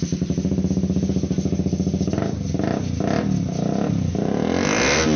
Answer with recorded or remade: recorded